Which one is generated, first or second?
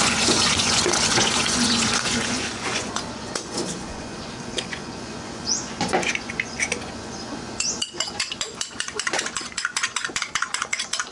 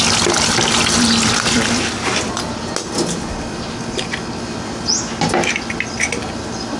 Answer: first